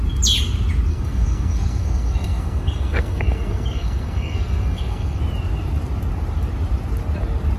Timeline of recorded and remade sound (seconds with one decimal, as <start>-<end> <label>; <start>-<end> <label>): 0.0-0.9 recorded; 0.9-5.2 remade; 5.2-7.6 recorded